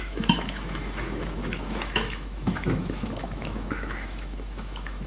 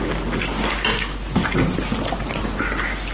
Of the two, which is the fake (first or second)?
first